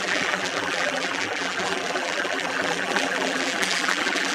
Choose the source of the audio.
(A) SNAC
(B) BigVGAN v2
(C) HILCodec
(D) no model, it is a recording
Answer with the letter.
B